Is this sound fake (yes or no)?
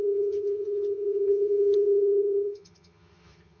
yes